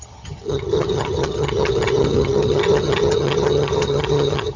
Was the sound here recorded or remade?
remade